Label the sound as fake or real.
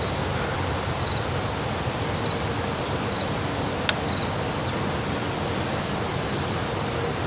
real